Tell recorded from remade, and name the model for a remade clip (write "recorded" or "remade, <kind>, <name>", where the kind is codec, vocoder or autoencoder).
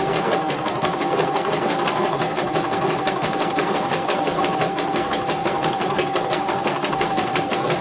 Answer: remade, codec, SNAC